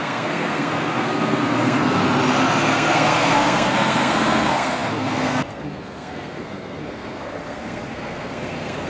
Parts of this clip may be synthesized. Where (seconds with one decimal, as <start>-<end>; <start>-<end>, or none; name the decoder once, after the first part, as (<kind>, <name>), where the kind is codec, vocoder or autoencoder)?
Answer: 0.0-2.0 (codec, SNAC); 2.5-8.9